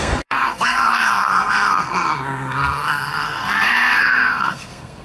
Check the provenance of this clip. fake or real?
fake